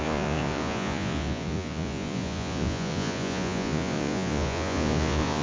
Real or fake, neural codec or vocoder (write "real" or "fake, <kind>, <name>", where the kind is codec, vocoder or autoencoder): fake, vocoder, Vocos